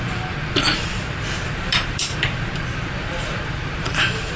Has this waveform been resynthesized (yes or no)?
yes